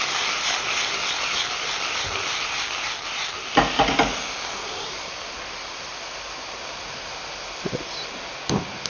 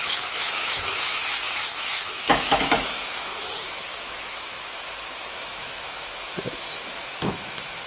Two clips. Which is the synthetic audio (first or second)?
second